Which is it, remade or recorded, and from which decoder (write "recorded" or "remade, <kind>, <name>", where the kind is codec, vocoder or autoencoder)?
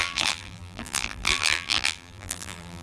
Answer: remade, vocoder, BigVGAN v2